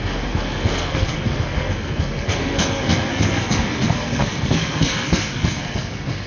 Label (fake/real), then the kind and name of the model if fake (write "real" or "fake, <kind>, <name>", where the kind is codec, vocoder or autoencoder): fake, codec, SNAC